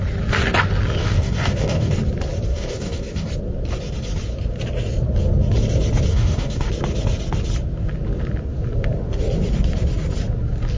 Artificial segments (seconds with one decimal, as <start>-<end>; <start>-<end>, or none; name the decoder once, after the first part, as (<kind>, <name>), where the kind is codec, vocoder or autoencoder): 1.0-1.9 (codec, DAC); 2.5-3.3; 6.1-6.7